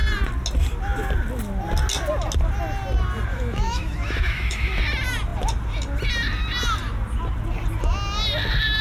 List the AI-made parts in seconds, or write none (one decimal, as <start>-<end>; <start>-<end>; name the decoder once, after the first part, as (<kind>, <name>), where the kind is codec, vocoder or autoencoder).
3.3-4.8 (autoencoder, DAC-VAE)